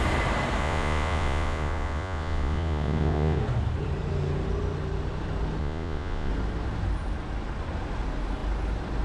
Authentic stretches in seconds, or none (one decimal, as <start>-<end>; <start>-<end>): 0.0-0.6; 3.4-5.6; 6.3-9.0